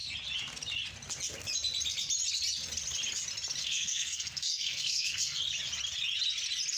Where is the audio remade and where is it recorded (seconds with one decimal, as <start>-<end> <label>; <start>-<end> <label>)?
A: 0.0-3.6 recorded; 3.6-5.4 remade; 5.4-6.8 recorded